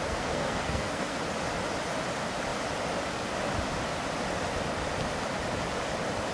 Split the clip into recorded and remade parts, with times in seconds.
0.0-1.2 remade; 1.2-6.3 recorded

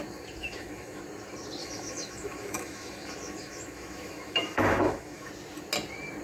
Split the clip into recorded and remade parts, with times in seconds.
0.0-0.4 recorded; 0.4-1.0 remade; 1.0-1.6 recorded; 1.6-5.3 remade; 5.3-6.2 recorded

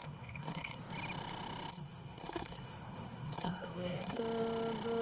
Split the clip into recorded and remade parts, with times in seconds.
0.0-0.8 remade; 0.8-1.7 recorded; 1.7-4.2 remade; 4.2-5.0 recorded

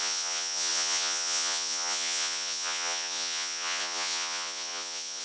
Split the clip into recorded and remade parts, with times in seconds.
0.0-5.2 remade